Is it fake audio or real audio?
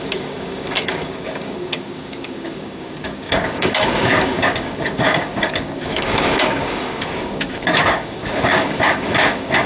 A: fake